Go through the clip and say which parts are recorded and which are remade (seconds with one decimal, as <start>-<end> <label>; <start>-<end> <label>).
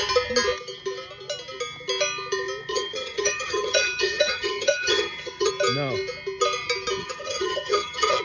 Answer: 0.0-2.7 recorded; 2.7-5.5 remade; 5.5-7.0 recorded; 7.0-8.2 remade